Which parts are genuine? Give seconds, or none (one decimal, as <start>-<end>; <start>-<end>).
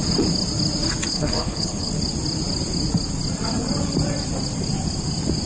0.0-1.1; 1.9-5.5